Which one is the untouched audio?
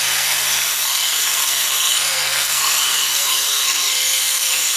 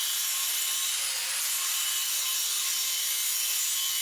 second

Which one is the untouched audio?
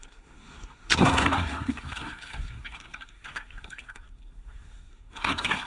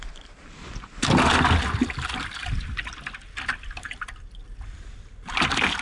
second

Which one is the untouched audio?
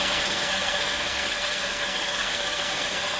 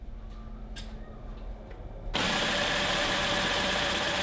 second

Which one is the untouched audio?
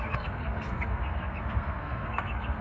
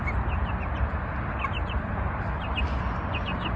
second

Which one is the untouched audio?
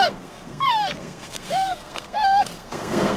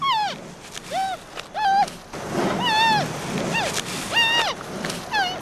second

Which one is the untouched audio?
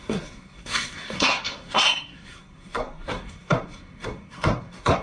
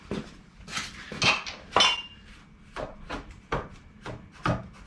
second